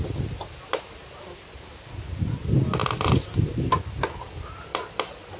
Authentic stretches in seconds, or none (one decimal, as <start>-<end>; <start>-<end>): 0.0-5.4